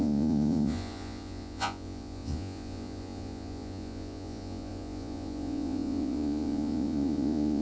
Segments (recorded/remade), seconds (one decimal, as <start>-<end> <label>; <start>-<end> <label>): 0.0-7.6 remade